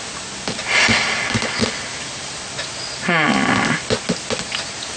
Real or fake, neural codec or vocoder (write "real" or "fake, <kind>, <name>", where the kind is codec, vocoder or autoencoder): real